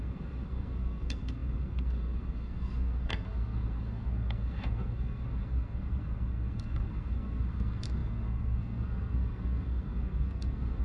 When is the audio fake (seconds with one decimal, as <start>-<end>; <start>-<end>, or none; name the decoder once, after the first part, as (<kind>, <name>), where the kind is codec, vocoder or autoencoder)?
0.0-10.8 (codec, SNAC)